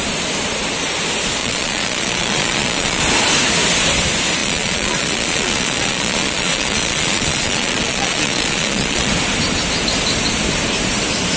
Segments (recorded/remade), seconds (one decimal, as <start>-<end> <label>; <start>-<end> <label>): 0.0-1.4 recorded; 1.4-3.0 remade; 3.0-4.4 recorded; 4.4-9.1 remade; 9.1-11.4 recorded